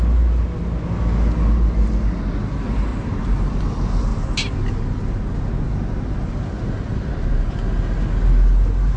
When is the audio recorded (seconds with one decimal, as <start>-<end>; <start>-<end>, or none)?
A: 0.0-2.9; 3.6-9.0